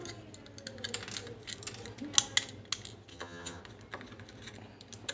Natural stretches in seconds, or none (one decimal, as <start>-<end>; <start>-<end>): 0.0-3.1; 3.6-5.1